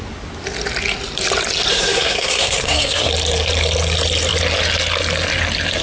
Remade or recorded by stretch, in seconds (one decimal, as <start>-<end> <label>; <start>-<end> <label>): 0.0-1.7 recorded; 1.7-3.1 remade; 3.1-5.8 recorded